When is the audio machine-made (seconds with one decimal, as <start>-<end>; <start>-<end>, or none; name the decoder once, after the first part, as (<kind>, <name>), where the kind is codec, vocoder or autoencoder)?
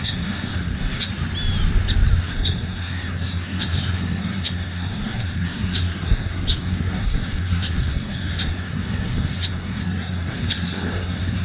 0.0-1.1 (codec, SNAC); 2.2-11.4